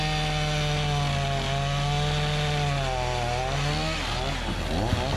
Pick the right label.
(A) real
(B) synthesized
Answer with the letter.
A